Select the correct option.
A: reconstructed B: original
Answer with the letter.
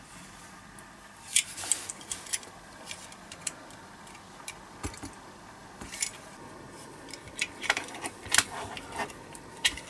B